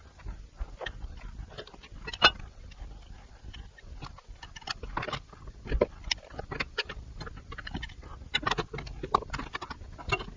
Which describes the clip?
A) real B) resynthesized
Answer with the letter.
A